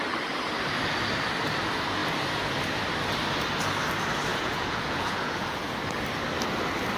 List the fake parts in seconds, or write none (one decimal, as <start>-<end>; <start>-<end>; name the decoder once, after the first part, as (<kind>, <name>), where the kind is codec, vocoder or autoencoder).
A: 4.3-5.8 (vocoder, Vocos)